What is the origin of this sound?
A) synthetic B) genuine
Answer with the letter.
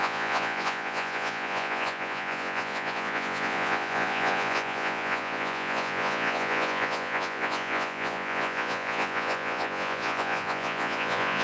A